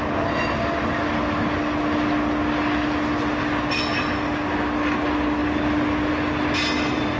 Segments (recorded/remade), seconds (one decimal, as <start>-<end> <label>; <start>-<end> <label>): 0.0-7.2 recorded